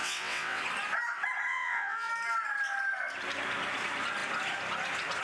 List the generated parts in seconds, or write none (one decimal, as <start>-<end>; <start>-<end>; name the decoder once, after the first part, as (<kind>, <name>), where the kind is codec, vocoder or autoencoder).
0.0-0.6 (vocoder, WaveNeXt); 1.5-2.1